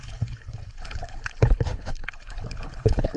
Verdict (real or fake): fake